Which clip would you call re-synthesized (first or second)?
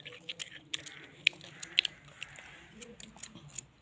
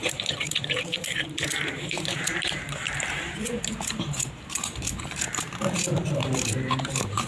second